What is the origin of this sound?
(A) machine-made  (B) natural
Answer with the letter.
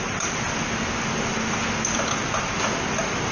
B